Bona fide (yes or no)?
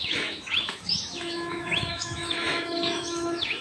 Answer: no